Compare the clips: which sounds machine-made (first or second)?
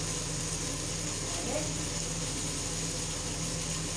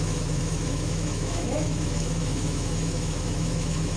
second